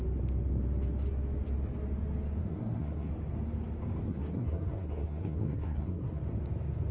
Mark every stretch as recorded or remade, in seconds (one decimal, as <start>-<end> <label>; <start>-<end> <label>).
0.0-2.4 recorded; 2.4-3.1 remade; 3.1-4.1 recorded; 4.1-6.2 remade; 6.2-6.9 recorded